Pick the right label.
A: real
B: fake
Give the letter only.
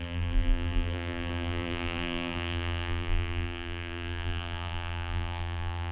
B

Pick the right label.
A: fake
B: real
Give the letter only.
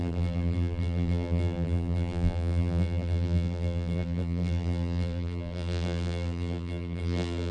A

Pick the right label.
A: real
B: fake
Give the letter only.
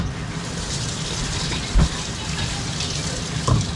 B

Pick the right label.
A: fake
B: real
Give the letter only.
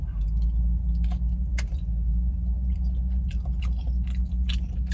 B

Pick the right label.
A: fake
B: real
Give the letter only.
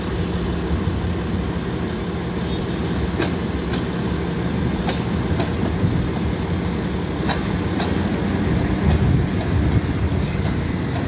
B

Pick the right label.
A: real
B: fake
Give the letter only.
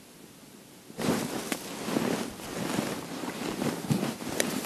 A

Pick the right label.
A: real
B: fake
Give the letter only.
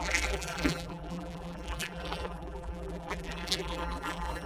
B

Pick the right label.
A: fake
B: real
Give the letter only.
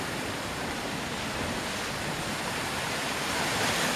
A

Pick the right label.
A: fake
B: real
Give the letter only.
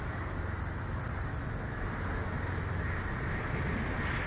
B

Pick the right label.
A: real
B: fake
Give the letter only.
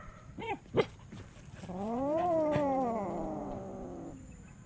B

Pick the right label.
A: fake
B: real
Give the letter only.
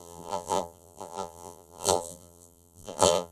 A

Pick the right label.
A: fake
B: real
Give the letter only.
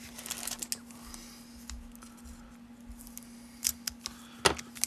B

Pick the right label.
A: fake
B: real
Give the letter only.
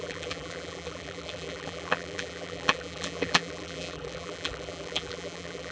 A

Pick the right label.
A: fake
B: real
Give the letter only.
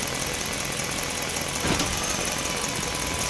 A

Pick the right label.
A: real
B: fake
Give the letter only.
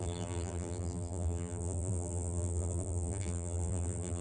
B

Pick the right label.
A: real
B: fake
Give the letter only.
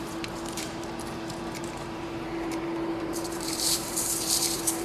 B